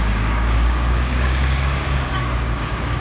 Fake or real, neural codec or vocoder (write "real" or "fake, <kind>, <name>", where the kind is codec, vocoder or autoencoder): fake, codec, DAC